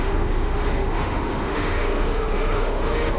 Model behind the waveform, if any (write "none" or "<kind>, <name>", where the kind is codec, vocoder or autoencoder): autoencoder, DAC-VAE